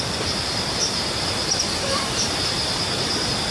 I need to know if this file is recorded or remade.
recorded